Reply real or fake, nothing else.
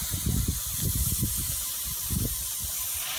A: real